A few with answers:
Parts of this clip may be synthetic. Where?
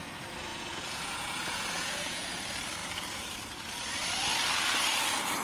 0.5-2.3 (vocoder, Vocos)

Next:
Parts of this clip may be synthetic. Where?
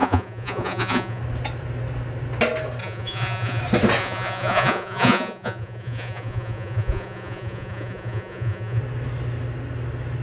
0.0-1.2 (vocoder, Vocos); 2.8-3.6; 4.0-8.8